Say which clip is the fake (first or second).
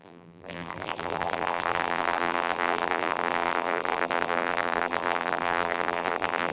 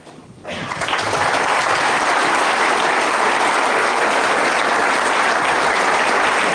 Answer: first